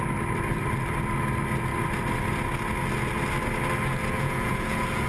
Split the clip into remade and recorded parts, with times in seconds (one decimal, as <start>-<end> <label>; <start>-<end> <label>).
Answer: 0.0-4.0 recorded; 4.0-5.1 remade